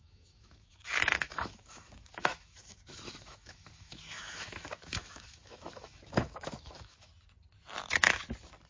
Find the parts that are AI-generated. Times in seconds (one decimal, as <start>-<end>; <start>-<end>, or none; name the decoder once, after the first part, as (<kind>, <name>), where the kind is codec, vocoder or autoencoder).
0.0-7.1 (autoencoder, DAC-VAE)